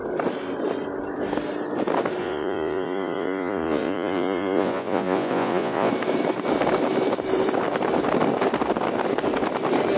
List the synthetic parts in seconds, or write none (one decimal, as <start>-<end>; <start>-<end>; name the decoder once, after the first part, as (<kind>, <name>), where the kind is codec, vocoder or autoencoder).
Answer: 2.2-5.9 (vocoder, Vocos)